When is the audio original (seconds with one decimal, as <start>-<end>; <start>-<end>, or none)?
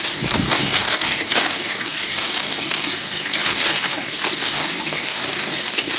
none